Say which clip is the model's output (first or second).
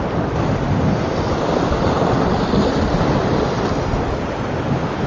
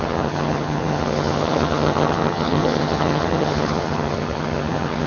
second